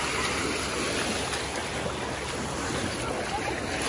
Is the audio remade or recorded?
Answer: recorded